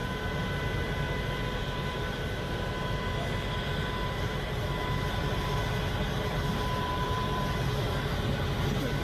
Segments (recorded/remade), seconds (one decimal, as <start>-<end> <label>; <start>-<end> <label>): 0.0-4.6 remade; 4.6-6.0 recorded; 6.0-7.7 remade; 7.7-9.0 recorded